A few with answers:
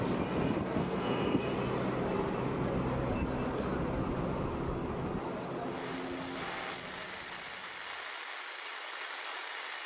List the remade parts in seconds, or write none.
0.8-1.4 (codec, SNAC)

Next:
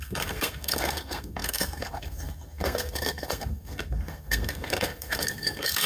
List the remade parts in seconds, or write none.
0.0-5.9 (codec, SNAC)

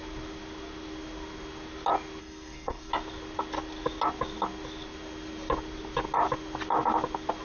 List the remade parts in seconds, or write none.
2.2-2.9 (codec, SNAC)

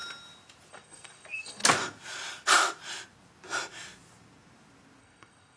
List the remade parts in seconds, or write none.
0.7-1.6 (codec, SNAC); 5.0-5.6

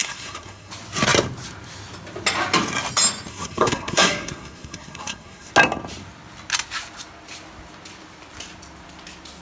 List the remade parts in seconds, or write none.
0.0-0.7 (codec, SNAC); 3.3-5.5

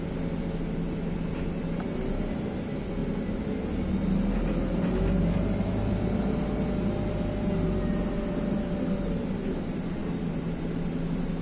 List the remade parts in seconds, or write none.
none

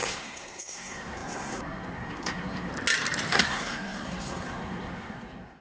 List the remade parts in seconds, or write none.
0.0-2.7 (codec, SNAC); 3.3-5.6

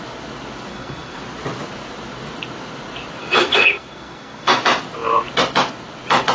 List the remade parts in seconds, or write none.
0.7-1.2 (codec, SNAC); 3.2-4.6